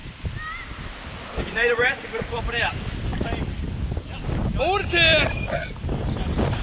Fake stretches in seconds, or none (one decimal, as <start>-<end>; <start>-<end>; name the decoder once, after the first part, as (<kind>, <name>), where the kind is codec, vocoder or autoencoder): none